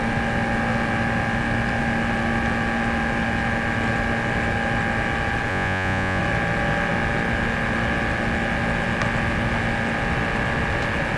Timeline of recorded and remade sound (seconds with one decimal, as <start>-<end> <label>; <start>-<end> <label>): 0.0-5.5 recorded; 5.5-6.2 remade; 6.2-11.2 recorded